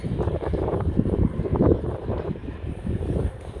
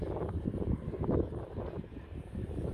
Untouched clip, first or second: second